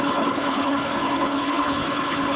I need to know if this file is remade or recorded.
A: remade